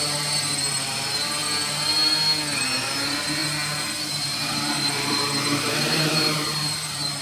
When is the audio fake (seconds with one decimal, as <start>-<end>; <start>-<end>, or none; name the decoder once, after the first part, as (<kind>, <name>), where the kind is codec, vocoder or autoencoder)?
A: 0.0-1.4 (vocoder, BigVGAN v2); 2.6-3.4; 4.0-7.2